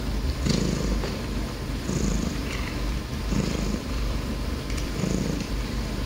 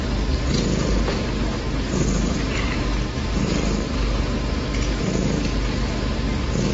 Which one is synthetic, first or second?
first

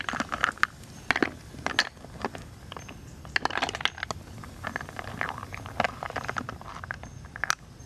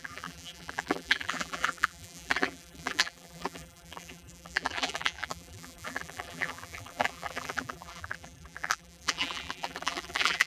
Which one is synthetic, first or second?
second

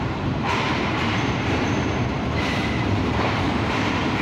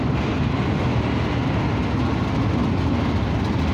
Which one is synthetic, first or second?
first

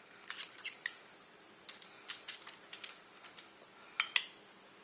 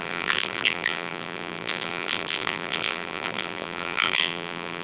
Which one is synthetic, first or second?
second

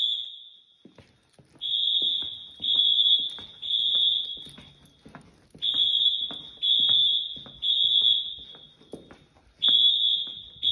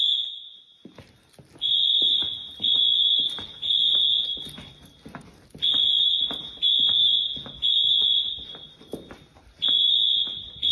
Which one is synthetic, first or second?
second